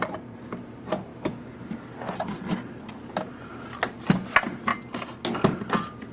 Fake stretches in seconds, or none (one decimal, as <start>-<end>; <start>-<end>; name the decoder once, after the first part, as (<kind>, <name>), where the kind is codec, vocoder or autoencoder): 0.0-1.1 (vocoder, BigVGAN v2); 3.3-4.7; 5.4-6.1